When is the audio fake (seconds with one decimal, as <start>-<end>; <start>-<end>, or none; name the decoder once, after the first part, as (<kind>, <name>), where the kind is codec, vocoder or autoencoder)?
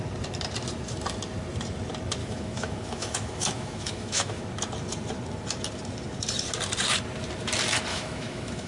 2.2-4.4 (autoencoder, DAC-VAE); 7.9-8.7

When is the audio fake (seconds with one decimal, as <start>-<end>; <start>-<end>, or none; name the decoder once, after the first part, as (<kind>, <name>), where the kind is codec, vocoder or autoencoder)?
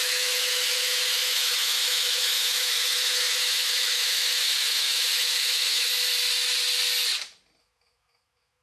0.0-5.9 (autoencoder, DAC-VAE); 7.6-8.6